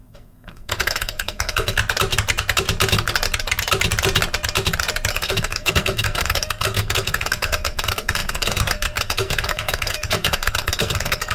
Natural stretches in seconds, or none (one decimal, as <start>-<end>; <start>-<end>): 1.8-5.1